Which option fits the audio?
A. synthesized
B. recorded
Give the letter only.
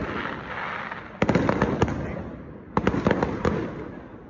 B